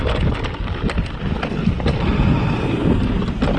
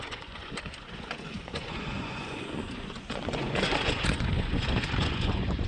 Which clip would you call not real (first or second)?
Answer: second